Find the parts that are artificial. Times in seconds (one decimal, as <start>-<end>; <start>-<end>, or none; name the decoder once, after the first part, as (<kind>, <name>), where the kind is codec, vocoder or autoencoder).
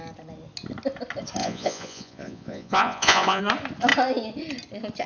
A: 1.4-3.4 (vocoder, Vocos)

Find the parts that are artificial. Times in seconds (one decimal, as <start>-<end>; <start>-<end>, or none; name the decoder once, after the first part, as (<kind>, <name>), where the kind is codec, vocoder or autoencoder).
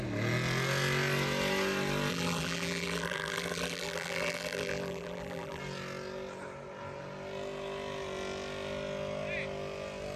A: 2.1-5.6 (vocoder, BigVGAN v2)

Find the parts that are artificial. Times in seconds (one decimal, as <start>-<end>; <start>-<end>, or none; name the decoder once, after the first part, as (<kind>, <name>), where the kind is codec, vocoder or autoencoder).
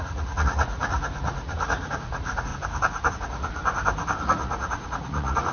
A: 0.0-2.5 (vocoder, Vocos); 3.1-3.6; 4.2-5.5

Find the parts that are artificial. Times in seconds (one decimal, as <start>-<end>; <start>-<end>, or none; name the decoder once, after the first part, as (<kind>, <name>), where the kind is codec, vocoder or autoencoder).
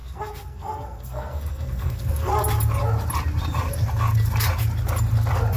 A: 0.0-2.3 (codec, SNAC)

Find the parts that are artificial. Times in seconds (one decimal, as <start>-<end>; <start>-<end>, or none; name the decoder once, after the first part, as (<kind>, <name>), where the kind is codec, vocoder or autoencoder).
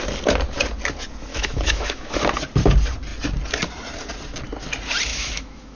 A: 1.3-2.2 (autoencoder, DAC-VAE); 5.1-5.8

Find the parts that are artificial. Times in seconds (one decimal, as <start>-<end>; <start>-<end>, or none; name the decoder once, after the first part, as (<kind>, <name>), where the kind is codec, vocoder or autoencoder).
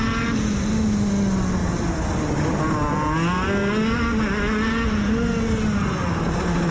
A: none